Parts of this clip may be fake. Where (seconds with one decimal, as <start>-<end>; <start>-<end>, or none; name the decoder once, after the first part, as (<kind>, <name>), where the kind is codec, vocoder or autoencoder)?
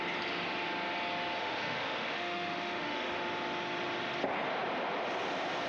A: 1.4-3.2 (autoencoder, DAC-VAE)